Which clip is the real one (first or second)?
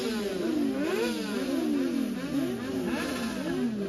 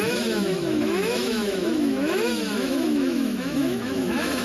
first